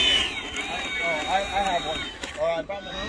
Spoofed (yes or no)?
no